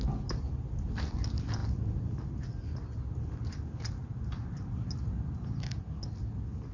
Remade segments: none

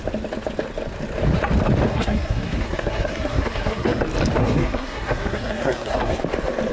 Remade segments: 1.9-4.0 (codec, SNAC); 4.4-6.2